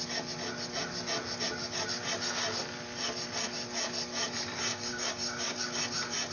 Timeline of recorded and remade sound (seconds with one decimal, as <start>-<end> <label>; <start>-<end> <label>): 0.0-4.7 recorded; 4.7-5.6 remade; 5.6-6.3 recorded